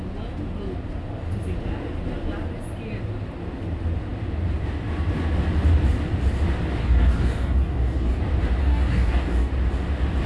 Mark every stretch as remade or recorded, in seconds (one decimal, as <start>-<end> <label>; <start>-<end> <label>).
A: 0.0-6.8 recorded; 6.8-8.2 remade; 8.2-8.6 recorded; 8.6-9.5 remade; 9.5-10.3 recorded